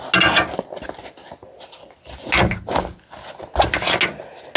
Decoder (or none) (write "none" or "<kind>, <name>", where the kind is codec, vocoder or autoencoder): none